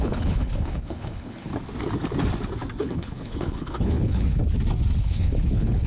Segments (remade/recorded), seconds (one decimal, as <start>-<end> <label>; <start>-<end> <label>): 0.0-1.5 remade; 1.5-2.8 recorded; 2.8-4.4 remade; 4.4-5.0 recorded; 5.0-5.9 remade